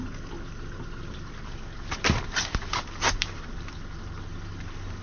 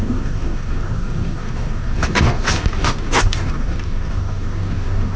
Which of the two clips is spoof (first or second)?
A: second